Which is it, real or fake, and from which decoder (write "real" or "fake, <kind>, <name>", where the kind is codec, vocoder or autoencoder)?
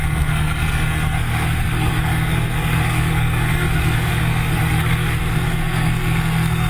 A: fake, codec, SNAC